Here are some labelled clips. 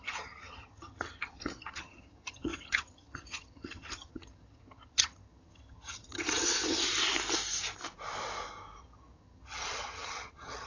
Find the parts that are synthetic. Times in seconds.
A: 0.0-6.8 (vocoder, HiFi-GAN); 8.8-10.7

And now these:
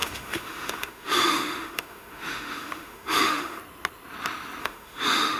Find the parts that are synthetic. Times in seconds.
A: 0.0-3.6 (autoencoder, DAC-VAE); 4.6-5.4

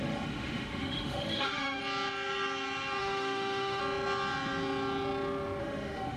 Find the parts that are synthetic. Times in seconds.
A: 0.0-1.8 (autoencoder, DAC-VAE); 3.0-3.8; 5.6-6.2

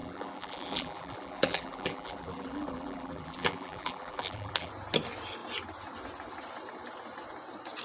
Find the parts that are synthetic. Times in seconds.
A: 0.0-4.7 (vocoder, BigVGAN v2)